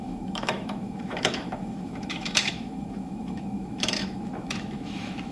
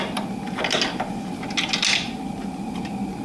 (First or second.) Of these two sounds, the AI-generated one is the first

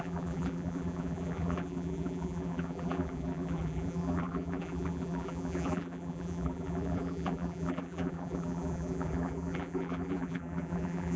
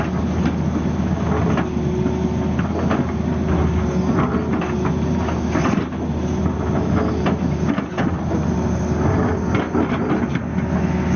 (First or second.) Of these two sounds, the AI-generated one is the first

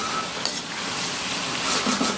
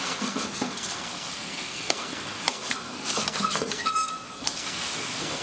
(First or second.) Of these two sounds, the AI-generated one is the second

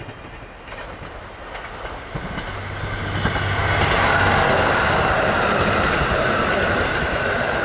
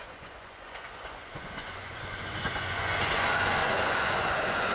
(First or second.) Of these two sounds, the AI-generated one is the second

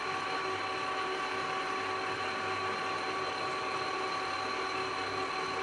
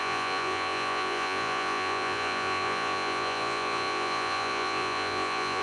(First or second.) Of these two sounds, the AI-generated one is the second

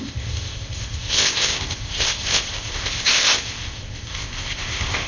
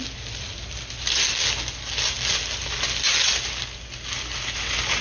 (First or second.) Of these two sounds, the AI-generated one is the first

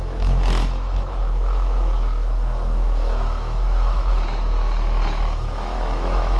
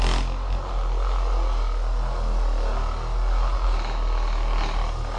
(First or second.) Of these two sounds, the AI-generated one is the first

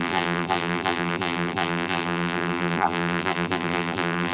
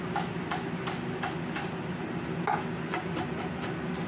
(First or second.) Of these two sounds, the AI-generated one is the first